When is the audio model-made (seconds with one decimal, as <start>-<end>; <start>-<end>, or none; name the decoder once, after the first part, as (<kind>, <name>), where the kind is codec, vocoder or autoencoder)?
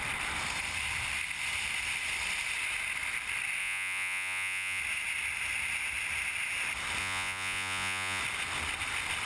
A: 3.6-4.8 (vocoder, Vocos); 7.0-8.2